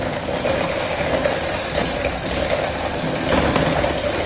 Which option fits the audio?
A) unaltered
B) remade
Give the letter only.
A